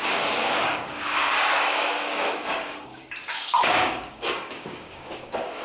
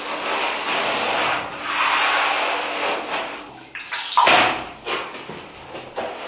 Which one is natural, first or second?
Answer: second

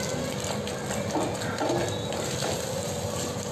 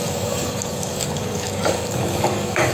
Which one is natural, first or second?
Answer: first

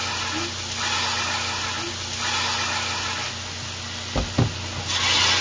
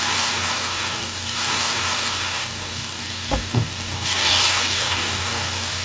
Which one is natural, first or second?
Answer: first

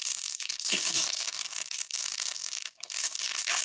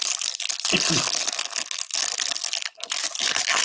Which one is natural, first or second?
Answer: second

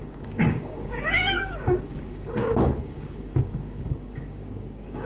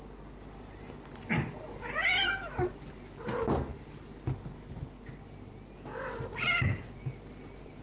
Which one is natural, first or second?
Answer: second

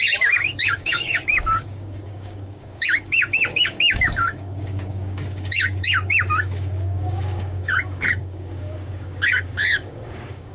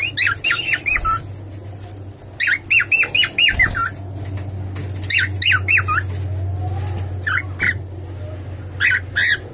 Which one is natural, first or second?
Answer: second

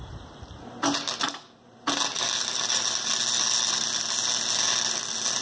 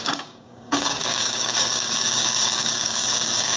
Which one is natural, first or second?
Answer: first